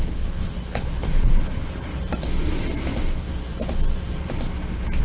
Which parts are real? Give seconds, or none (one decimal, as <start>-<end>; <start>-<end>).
1.9-5.0